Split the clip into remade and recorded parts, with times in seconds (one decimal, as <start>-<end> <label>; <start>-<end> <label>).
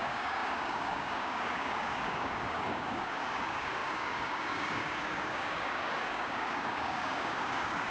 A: 0.0-7.9 remade